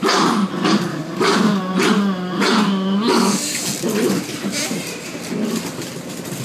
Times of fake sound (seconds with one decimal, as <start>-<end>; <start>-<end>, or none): 0.9-1.6; 3.1-3.6